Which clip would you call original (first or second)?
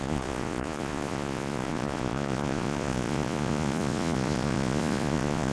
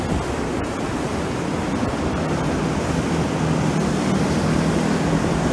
second